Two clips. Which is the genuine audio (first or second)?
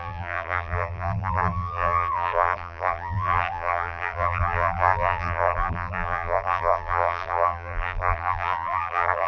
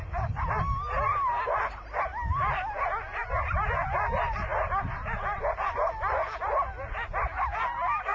second